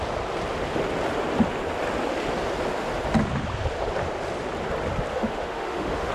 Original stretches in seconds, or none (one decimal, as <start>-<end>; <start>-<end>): 0.0-5.1